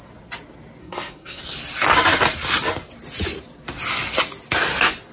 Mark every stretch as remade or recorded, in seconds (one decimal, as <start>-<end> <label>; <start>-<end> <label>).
0.0-0.8 recorded; 0.8-1.4 remade; 1.4-5.1 recorded

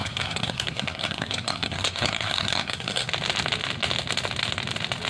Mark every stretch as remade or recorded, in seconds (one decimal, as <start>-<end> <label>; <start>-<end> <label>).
0.0-3.1 remade; 3.1-5.1 recorded

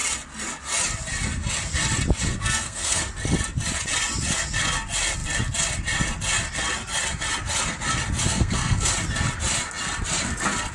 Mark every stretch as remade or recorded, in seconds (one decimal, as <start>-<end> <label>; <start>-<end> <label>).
0.0-2.3 recorded; 2.3-3.0 remade; 3.0-8.3 recorded; 8.3-8.9 remade; 8.9-10.7 recorded

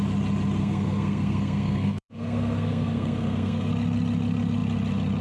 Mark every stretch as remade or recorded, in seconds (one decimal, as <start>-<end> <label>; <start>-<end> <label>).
0.0-0.6 recorded; 0.6-3.7 remade; 3.7-5.2 recorded

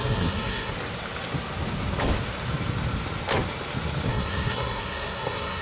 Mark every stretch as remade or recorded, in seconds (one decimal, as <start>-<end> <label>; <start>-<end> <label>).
0.0-0.7 remade; 0.7-4.1 recorded; 4.1-5.6 remade

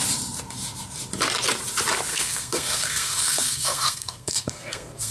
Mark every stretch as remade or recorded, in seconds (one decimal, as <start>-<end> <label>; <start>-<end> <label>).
0.0-2.1 recorded; 2.1-5.1 remade